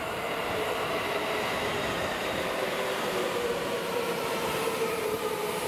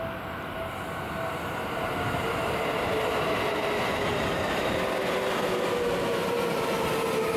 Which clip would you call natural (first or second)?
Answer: second